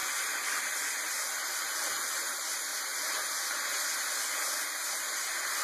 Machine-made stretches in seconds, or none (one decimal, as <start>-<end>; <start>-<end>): none